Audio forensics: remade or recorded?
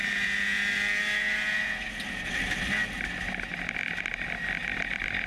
recorded